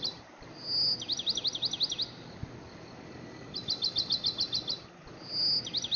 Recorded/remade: recorded